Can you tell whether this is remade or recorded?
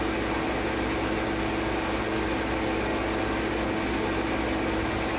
recorded